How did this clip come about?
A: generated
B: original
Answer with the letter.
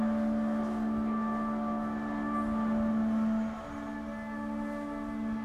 B